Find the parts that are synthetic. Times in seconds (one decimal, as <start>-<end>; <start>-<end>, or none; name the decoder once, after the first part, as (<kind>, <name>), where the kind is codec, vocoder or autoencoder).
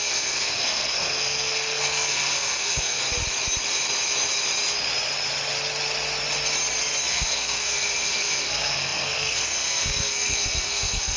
0.0-3.0 (codec, SNAC); 7.1-11.2